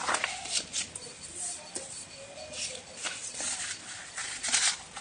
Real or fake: real